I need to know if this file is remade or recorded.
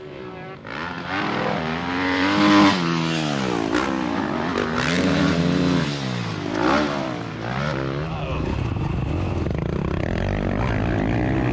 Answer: recorded